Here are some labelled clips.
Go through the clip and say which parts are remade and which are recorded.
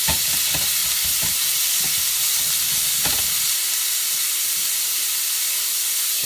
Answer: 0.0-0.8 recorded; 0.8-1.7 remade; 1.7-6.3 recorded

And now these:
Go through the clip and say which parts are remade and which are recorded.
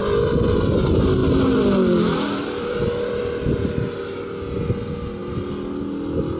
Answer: 0.0-0.5 remade; 0.5-1.2 recorded; 1.2-3.2 remade; 3.2-6.4 recorded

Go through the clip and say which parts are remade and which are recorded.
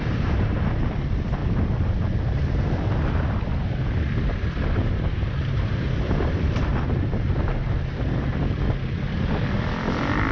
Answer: 0.0-1.4 recorded; 1.4-2.4 remade; 2.4-4.8 recorded; 4.8-6.7 remade; 6.7-10.3 recorded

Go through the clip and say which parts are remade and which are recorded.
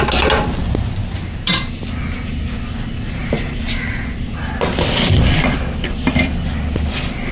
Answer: 0.0-1.0 recorded; 1.0-2.5 remade; 2.5-3.2 recorded; 3.2-4.4 remade; 4.4-7.3 recorded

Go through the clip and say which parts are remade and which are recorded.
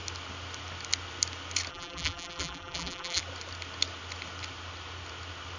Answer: 0.0-1.7 recorded; 1.7-3.2 remade; 3.2-5.6 recorded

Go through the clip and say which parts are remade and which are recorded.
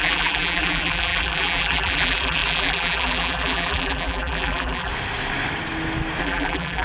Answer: 0.0-4.9 remade; 4.9-6.2 recorded; 6.2-6.8 remade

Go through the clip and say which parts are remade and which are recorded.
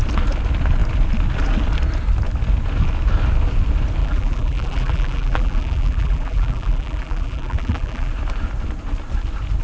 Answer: 0.0-4.0 recorded; 4.0-8.1 remade; 8.1-9.6 recorded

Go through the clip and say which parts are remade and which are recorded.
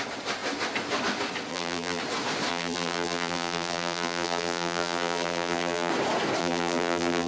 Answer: 0.0-1.5 recorded; 1.5-2.0 remade; 2.0-2.5 recorded; 2.5-5.9 remade; 5.9-6.4 recorded; 6.4-7.3 remade